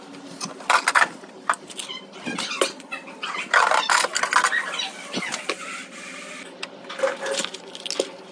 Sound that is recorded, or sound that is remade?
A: recorded